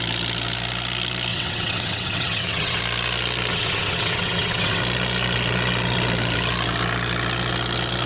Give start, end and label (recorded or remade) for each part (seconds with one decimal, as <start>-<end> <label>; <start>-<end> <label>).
0.0-1.3 recorded; 1.3-2.8 remade; 2.8-3.5 recorded; 3.5-4.8 remade; 4.8-8.1 recorded